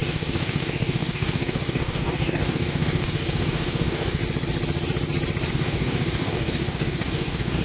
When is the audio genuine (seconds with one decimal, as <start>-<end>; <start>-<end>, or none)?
4.2-5.5